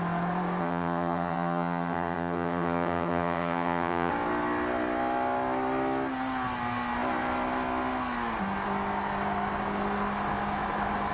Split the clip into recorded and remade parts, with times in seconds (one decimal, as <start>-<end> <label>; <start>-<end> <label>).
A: 0.0-0.6 recorded; 0.6-4.1 remade; 4.1-11.1 recorded